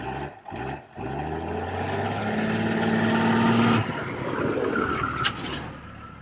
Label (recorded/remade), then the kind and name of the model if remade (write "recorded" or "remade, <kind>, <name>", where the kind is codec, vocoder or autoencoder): recorded